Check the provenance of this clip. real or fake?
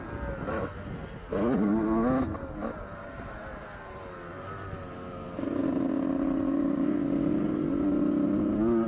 real